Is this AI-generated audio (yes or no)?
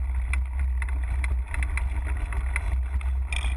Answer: no